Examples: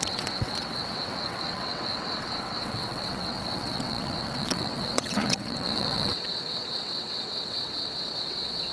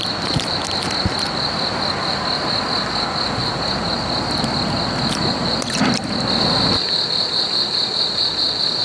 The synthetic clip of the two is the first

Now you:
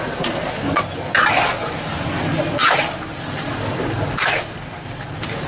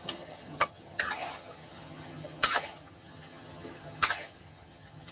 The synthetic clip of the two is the second